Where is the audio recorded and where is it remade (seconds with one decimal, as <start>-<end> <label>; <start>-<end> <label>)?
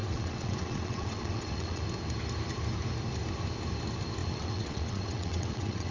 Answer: 0.0-1.8 remade; 1.8-4.2 recorded; 4.2-5.9 remade